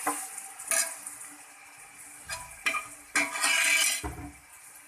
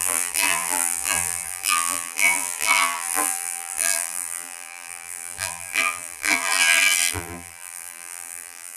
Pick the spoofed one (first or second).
second